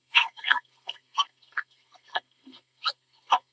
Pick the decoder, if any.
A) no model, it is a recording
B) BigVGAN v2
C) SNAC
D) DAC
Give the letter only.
C